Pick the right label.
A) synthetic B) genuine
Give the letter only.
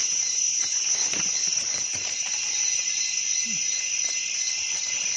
B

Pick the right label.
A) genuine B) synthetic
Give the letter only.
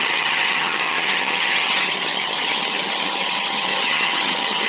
B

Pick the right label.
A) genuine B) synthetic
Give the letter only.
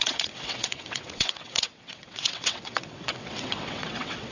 B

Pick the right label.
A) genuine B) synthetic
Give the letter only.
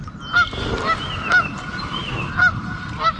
A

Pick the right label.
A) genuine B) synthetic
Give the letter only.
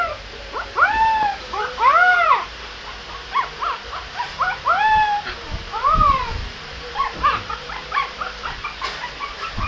B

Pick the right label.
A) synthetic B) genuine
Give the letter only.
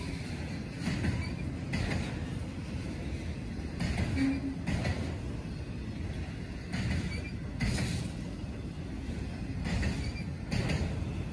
B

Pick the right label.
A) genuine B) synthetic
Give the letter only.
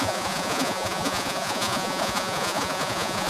B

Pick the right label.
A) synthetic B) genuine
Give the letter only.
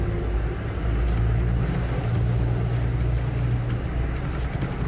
B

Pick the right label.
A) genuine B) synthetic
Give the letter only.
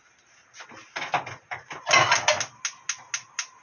A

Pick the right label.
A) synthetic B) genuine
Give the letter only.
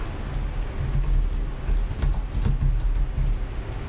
B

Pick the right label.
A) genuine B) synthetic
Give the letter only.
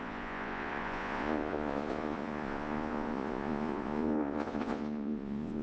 B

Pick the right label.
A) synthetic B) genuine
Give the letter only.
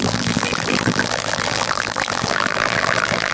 A